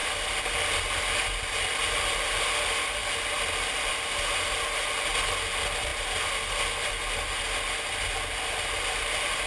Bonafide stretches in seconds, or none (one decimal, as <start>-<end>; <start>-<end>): 0.0-9.5